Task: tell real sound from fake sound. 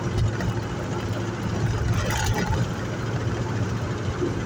real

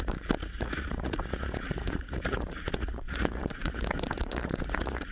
fake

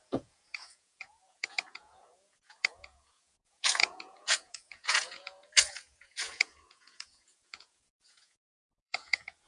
fake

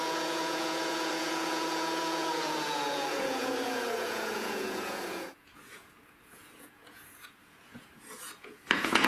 fake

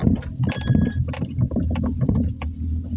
real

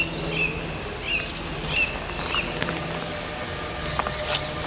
real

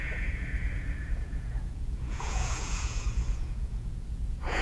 fake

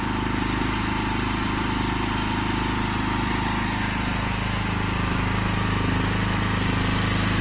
real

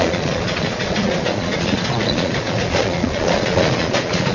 fake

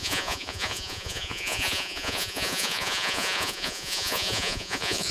fake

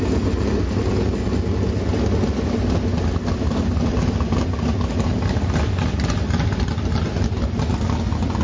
real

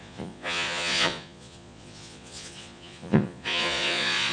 fake